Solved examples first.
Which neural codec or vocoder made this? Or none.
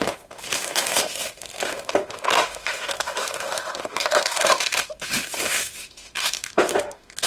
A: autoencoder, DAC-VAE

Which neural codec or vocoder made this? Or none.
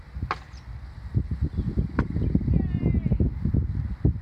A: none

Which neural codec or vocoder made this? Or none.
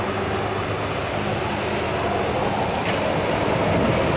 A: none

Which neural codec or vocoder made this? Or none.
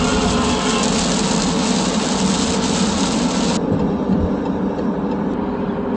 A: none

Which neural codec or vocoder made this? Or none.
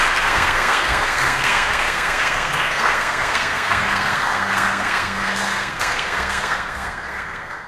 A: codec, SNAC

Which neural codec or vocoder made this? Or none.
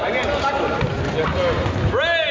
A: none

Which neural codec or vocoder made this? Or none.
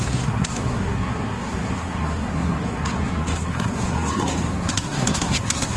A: codec, SNAC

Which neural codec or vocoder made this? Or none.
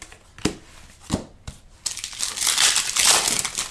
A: none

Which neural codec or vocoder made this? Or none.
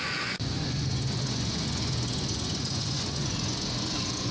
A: vocoder, Vocos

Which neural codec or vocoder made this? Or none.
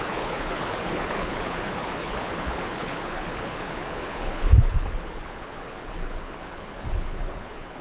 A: codec, HILCodec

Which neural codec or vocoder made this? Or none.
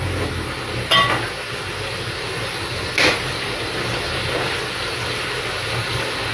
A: none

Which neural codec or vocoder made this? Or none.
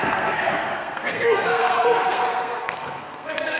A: codec, SNAC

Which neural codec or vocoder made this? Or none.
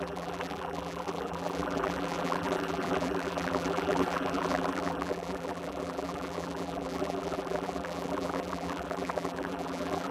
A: vocoder, BigVGAN v2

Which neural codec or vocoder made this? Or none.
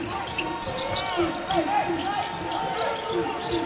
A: none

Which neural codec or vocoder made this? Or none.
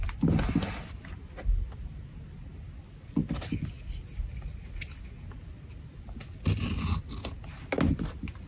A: none